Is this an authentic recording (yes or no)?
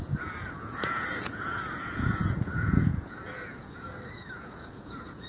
no